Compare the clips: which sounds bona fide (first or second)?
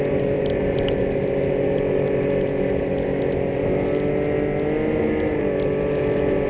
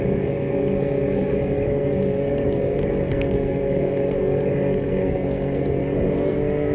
first